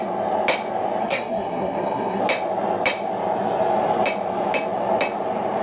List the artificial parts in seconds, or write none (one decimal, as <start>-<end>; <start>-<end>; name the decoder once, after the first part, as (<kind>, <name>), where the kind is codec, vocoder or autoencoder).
1.0-2.2 (codec, SNAC)